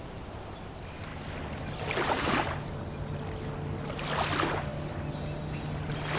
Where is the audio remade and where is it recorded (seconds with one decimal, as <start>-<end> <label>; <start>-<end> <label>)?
0.0-6.2 recorded